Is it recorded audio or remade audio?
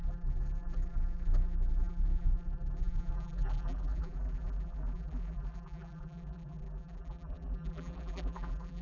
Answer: remade